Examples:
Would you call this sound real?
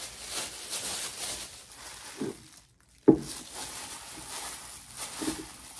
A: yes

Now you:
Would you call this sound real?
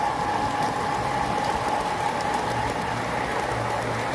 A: yes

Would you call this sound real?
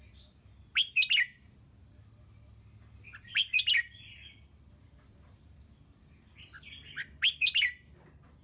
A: yes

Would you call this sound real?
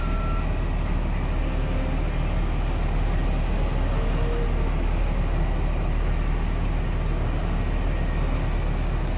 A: yes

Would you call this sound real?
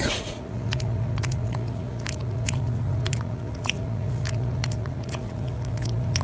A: no